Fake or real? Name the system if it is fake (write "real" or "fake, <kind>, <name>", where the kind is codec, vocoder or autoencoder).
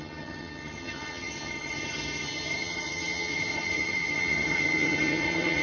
fake, vocoder, HiFi-GAN